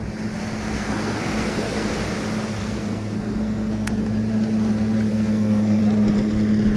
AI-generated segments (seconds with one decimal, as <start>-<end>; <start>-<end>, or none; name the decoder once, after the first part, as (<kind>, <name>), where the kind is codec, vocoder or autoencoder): 0.4-1.9 (codec, SNAC); 2.6-3.9; 5.1-5.8